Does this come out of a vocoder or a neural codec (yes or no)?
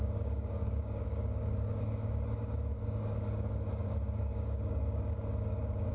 yes